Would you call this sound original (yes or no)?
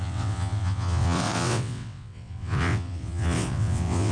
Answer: no